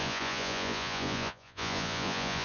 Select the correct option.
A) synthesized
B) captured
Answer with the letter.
A